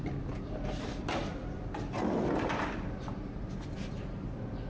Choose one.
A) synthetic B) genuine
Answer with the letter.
B